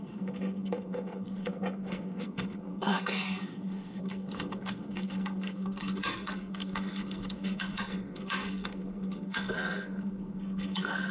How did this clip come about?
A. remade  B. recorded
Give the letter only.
A